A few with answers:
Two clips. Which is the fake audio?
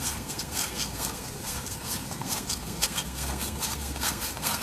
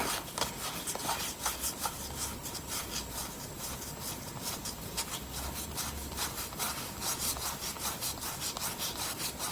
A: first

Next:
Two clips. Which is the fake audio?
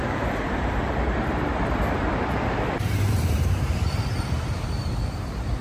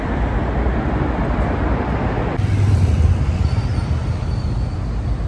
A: first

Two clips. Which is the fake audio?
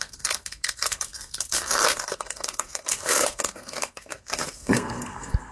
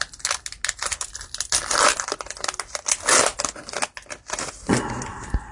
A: first